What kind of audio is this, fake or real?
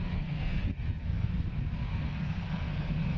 fake